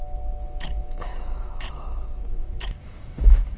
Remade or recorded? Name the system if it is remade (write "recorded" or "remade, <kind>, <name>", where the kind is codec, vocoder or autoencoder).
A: remade, autoencoder, DAC-VAE